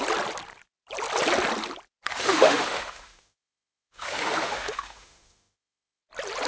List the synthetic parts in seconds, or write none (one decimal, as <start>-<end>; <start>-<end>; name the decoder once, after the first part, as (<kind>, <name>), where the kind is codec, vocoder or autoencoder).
2.1-6.0 (autoencoder, DAC-VAE)